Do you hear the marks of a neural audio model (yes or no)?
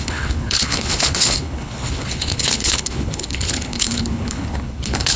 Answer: yes